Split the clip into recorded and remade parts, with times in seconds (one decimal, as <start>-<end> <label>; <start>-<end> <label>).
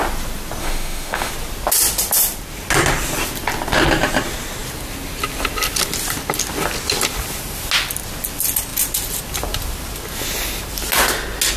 0.0-0.6 recorded; 0.6-1.3 remade; 1.3-11.6 recorded